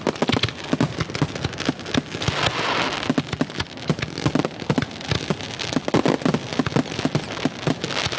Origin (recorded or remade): recorded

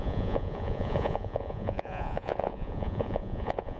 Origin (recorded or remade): remade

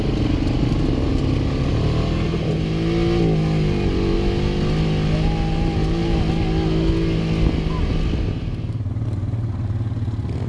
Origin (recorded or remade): recorded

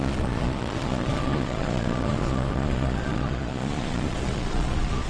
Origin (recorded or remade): remade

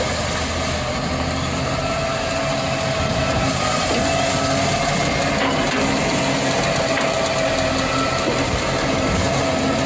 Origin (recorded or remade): recorded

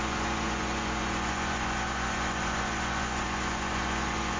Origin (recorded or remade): remade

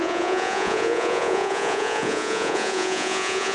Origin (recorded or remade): remade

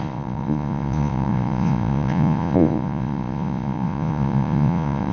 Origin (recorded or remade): remade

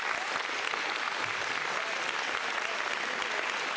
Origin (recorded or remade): recorded